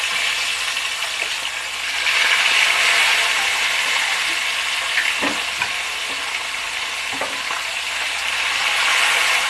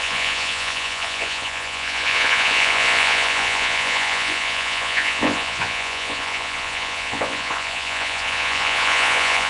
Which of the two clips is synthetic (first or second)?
second